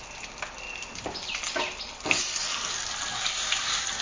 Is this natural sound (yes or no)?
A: yes